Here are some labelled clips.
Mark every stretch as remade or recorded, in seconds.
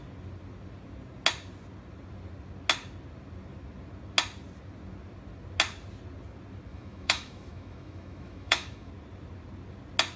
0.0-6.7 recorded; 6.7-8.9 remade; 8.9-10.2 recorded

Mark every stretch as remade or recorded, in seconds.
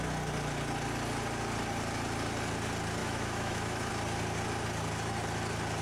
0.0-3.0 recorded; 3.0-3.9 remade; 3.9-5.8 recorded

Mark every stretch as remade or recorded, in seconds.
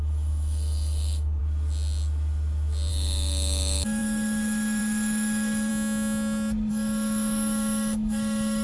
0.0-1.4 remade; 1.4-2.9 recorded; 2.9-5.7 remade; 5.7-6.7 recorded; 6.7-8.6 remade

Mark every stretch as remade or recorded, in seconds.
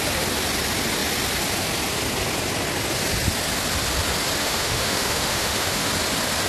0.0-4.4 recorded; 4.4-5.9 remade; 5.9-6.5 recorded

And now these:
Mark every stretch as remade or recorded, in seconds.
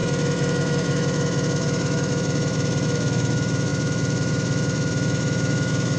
0.0-6.0 remade